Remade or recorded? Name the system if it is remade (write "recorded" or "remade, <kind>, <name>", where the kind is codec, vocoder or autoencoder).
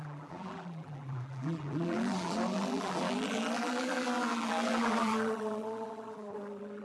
remade, vocoder, BigVGAN v2